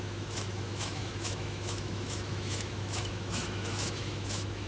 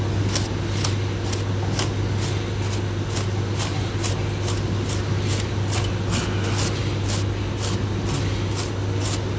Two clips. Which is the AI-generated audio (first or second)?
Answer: first